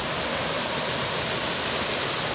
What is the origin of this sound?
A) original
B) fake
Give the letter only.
A